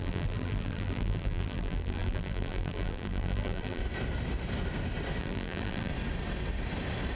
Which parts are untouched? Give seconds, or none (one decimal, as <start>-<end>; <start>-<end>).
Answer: 3.8-5.2; 5.9-7.2